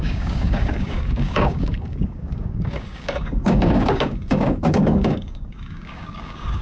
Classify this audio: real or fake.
fake